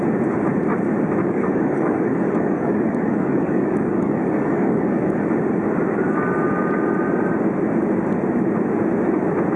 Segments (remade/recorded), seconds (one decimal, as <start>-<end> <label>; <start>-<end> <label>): 0.0-1.2 recorded; 1.2-5.3 remade; 5.3-9.6 recorded